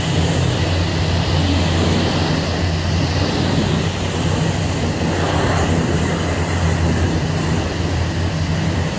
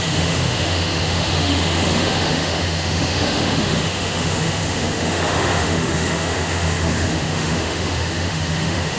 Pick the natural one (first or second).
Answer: first